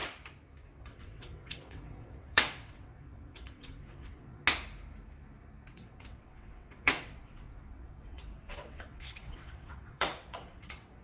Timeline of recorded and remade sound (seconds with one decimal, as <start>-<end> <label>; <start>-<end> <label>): 0.0-0.8 recorded; 0.8-4.4 remade; 4.4-5.7 recorded; 5.7-11.0 remade

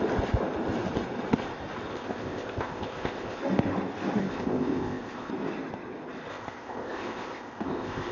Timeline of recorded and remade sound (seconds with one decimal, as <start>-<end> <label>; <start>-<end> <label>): 0.0-1.9 recorded; 1.9-3.4 remade; 3.4-4.2 recorded; 4.2-5.3 remade; 5.3-6.3 recorded; 6.3-8.1 remade

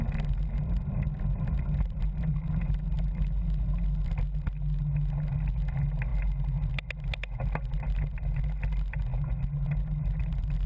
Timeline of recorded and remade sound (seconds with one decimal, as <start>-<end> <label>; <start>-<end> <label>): 0.0-10.7 recorded

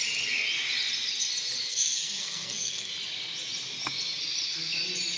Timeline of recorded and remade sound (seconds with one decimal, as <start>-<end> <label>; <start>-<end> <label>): 0.0-1.7 recorded; 1.7-2.9 remade; 2.9-5.2 recorded

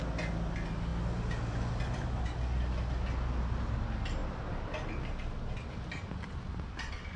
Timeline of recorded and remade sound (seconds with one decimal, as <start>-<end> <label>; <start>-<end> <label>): 0.0-7.2 recorded

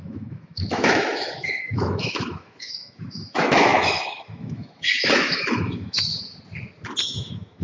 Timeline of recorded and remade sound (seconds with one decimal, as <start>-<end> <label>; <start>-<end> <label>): 0.0-6.1 remade; 6.1-7.0 recorded; 7.0-7.6 remade